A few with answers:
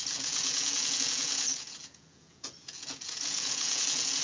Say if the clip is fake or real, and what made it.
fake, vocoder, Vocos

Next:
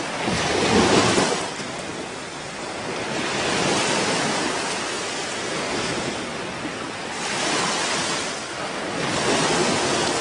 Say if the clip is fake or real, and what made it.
real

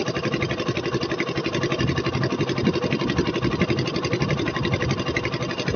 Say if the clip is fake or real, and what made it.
real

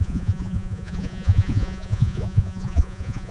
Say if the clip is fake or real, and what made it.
fake, vocoder, Vocos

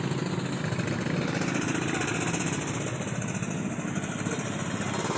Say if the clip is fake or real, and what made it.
real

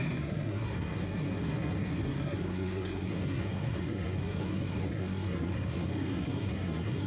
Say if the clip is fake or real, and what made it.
fake, codec, SNAC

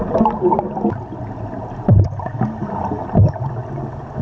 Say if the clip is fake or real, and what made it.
real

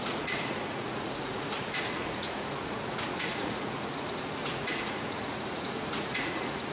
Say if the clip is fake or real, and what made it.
fake, vocoder, Vocos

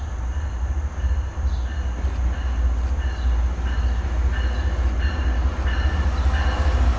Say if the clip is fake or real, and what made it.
real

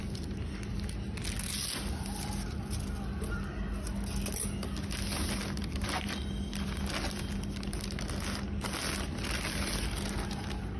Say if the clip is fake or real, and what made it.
real